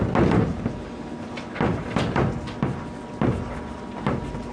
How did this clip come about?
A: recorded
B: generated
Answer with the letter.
A